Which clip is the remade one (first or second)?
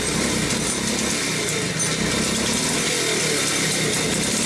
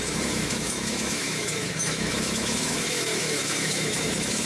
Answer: second